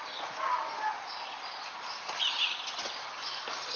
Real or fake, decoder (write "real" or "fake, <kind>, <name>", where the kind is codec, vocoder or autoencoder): real